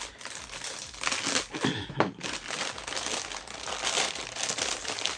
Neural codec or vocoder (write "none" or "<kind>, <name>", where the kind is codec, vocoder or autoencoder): none